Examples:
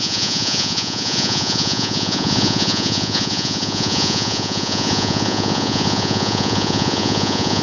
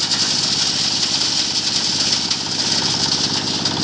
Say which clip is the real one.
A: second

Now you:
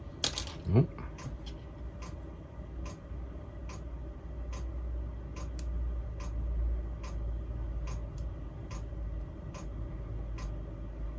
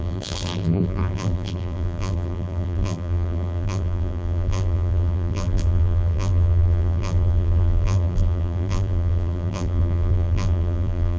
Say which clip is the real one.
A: first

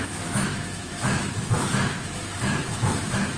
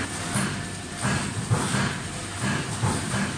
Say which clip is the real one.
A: second